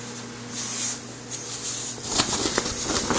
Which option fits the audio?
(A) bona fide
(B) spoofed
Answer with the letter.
A